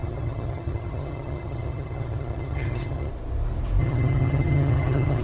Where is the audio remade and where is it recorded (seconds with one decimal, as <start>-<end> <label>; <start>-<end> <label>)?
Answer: 0.0-3.1 remade; 3.1-3.8 recorded; 3.8-5.2 remade